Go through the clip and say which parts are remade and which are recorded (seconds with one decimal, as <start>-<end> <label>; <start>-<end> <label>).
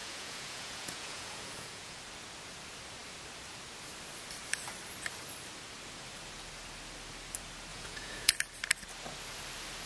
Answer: 0.0-2.0 remade; 2.0-7.7 recorded; 7.7-8.3 remade; 8.3-9.9 recorded